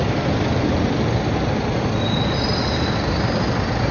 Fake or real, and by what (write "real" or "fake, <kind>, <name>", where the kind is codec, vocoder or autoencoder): real